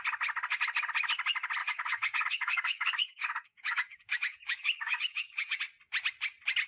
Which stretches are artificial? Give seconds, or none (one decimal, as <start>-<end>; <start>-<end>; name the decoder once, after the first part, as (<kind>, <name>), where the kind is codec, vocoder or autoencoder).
1.6-5.6 (codec, DAC)